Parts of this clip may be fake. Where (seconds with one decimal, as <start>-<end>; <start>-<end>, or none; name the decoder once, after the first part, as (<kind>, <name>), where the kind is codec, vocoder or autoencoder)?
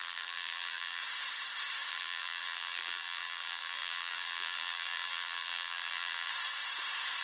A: 0.0-1.0 (vocoder, BigVGAN v2); 1.9-6.3